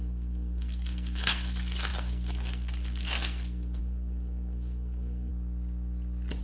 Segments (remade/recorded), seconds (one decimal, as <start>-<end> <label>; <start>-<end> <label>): 0.0-5.3 remade; 5.3-6.4 recorded